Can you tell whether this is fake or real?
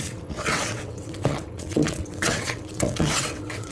fake